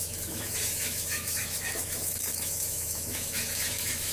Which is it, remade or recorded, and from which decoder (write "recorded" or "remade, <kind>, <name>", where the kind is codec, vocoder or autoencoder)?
remade, autoencoder, DAC-VAE